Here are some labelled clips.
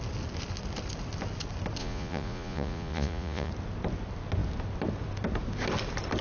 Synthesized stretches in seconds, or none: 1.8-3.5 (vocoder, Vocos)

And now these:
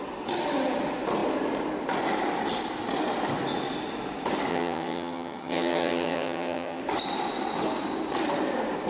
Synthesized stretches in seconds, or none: 4.5-6.8 (vocoder, HiFi-GAN)

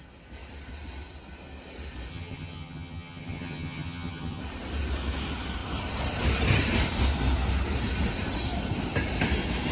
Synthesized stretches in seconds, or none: 2.1-4.4 (vocoder, HiFi-GAN)